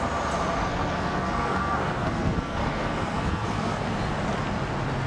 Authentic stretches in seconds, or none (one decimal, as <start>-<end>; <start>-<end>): 0.0-0.7; 3.8-5.1